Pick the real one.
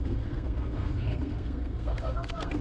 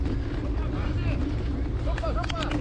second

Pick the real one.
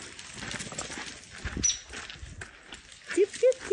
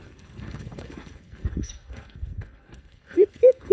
first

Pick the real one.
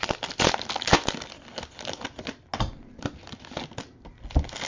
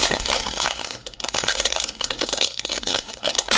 first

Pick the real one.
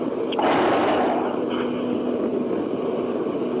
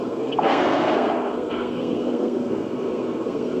first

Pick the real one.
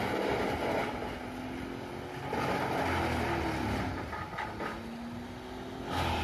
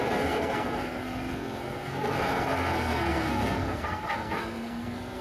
first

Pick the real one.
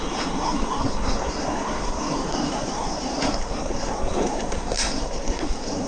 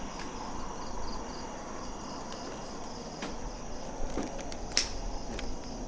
second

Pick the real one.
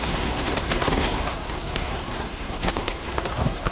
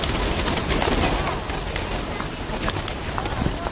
second